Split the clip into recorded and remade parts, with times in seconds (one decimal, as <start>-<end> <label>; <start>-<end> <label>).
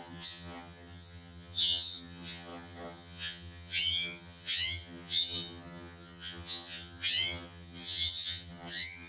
0.0-9.1 remade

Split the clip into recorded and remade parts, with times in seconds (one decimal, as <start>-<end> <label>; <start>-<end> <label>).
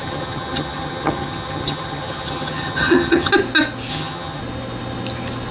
0.0-3.3 remade; 3.3-3.9 recorded; 3.9-4.4 remade; 4.4-5.5 recorded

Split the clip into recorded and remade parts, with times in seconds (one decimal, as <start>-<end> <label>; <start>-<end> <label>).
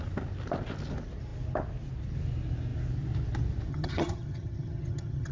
0.0-3.7 recorded; 3.7-5.3 remade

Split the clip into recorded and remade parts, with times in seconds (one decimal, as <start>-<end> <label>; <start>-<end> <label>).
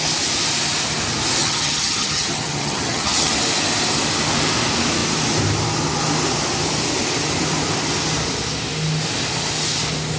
0.0-1.4 recorded; 1.4-3.3 remade; 3.3-10.2 recorded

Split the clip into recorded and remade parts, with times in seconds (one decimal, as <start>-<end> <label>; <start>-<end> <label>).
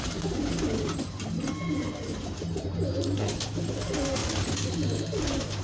0.0-5.6 recorded